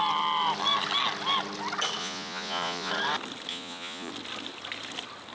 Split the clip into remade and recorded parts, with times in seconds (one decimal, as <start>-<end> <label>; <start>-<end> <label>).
0.0-2.0 recorded; 2.0-2.9 remade; 2.9-3.5 recorded; 3.5-4.1 remade; 4.1-5.3 recorded